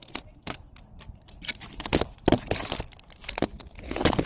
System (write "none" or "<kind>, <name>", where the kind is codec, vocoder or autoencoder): none